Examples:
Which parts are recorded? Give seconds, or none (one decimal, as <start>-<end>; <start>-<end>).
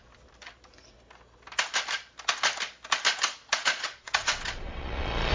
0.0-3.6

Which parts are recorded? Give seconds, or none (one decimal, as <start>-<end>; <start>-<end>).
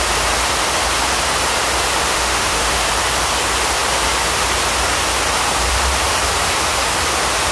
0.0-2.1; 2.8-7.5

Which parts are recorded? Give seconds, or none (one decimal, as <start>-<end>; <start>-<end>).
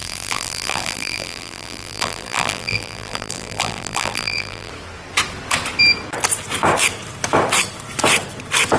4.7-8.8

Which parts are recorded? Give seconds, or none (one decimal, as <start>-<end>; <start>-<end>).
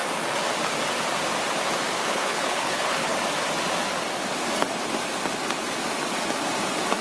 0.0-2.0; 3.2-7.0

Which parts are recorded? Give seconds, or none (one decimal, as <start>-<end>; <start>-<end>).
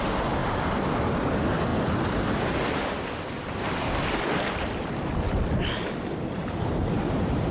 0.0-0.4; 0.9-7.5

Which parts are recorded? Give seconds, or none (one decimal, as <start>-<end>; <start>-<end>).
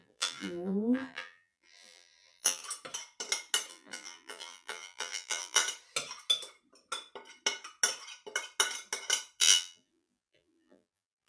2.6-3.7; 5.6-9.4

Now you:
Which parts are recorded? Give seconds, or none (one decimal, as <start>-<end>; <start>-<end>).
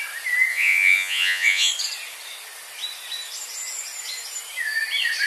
0.0-0.5; 1.7-5.3